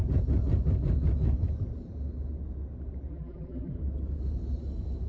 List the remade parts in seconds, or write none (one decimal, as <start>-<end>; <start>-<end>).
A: 3.1-3.7